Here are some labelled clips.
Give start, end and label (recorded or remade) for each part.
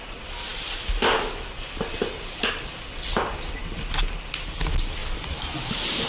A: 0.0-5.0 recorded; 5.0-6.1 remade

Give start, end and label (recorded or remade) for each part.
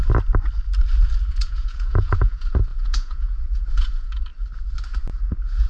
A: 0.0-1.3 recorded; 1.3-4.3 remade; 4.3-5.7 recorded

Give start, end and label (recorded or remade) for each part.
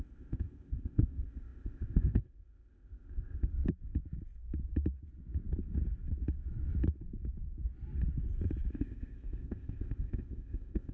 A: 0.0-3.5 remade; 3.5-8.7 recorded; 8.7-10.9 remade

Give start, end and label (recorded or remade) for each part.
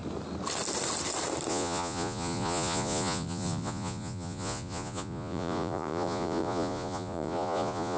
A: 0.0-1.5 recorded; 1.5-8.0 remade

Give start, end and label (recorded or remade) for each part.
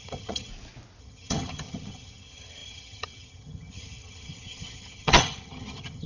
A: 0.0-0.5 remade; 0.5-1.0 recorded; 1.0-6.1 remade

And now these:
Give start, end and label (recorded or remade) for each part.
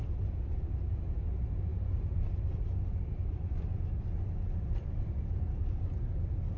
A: 0.0-6.6 recorded